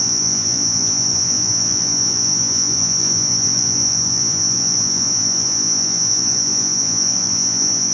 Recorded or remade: remade